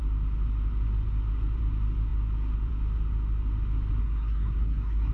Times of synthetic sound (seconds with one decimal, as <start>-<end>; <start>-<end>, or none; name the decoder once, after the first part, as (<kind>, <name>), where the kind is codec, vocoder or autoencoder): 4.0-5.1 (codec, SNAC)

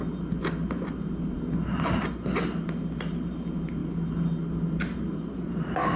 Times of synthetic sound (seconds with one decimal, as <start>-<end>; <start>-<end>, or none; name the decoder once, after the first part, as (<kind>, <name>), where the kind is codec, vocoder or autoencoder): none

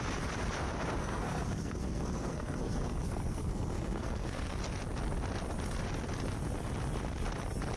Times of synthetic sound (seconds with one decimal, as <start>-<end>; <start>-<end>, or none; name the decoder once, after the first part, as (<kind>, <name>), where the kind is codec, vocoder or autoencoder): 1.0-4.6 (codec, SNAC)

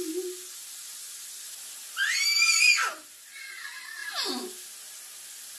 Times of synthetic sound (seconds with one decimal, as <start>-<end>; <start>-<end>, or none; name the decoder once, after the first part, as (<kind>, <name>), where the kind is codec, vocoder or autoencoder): none

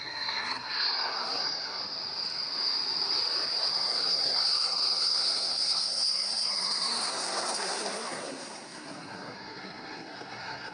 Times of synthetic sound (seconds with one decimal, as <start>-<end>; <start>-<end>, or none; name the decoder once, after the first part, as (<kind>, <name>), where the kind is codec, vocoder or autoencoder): 0.0-1.8 (codec, SNAC); 3.7-10.7